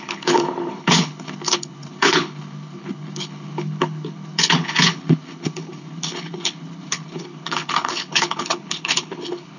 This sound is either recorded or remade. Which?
remade